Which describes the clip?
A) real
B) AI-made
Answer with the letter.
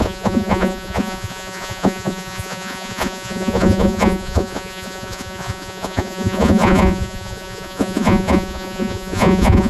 B